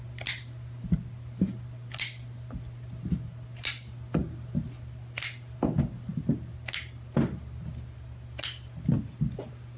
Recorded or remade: recorded